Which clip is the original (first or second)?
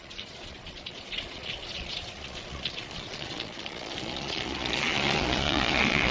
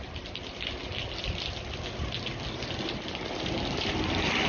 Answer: second